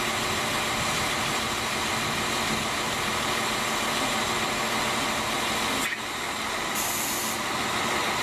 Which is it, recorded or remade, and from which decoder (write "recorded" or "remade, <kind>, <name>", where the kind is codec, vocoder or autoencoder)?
recorded